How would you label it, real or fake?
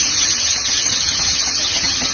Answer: fake